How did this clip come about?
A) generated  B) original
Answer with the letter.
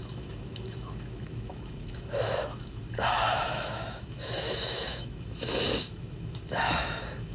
A